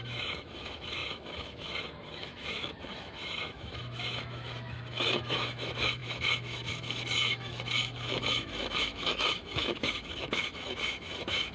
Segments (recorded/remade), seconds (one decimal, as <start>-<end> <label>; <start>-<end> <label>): 0.0-11.5 remade